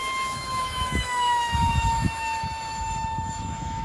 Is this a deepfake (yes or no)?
yes